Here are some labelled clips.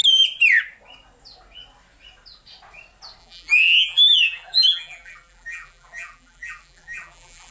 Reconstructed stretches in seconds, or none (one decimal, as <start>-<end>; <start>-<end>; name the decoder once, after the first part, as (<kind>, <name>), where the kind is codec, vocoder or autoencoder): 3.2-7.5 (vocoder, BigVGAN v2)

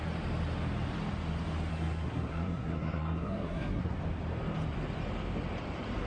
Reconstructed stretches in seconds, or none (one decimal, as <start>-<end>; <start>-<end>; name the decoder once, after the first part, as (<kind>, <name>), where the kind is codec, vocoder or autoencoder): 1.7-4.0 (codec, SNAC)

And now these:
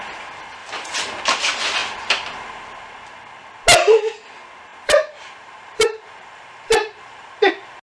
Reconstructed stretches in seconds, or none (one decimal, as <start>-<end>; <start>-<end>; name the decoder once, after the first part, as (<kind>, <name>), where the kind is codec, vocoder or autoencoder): 0.6-1.2 (vocoder, BigVGAN v2); 4.7-7.5